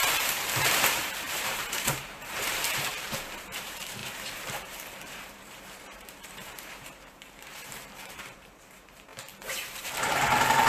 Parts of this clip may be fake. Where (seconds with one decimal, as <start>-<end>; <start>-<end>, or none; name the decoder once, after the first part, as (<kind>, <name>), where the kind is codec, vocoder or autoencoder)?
0.0-10.7 (vocoder, BigVGAN v2)